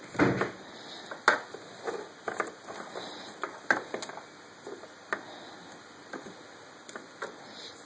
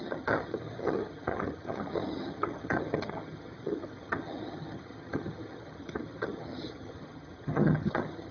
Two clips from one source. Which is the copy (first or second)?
second